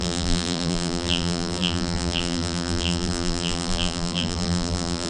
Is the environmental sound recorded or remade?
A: remade